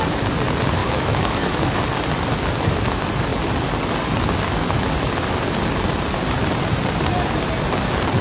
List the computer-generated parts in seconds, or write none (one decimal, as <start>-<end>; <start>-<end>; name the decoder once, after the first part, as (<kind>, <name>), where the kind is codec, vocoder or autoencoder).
0.8-1.8 (autoencoder, DAC-VAE)